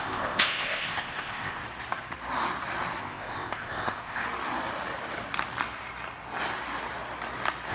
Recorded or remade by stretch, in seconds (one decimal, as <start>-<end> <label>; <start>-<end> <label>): 0.0-1.6 remade; 1.6-3.0 recorded; 3.0-4.2 remade; 4.2-7.7 recorded